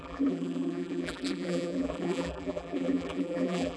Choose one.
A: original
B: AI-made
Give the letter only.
B